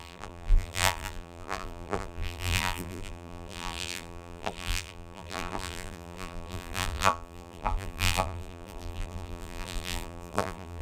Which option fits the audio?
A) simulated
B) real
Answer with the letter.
A